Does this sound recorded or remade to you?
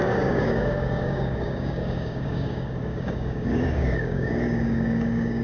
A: remade